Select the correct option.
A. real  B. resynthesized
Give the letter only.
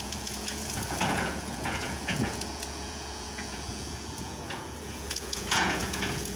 B